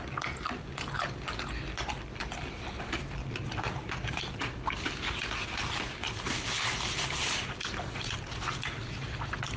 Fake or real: real